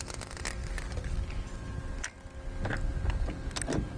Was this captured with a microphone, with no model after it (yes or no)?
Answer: yes